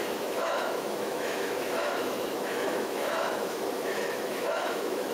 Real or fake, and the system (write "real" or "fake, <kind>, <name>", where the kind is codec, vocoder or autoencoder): fake, autoencoder, DAC-VAE